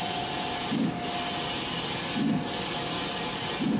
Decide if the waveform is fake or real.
real